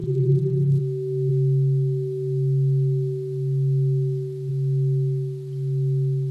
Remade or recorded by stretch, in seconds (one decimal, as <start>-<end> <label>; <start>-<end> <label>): 0.0-0.8 remade; 0.8-6.3 recorded